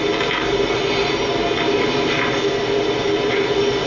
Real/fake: real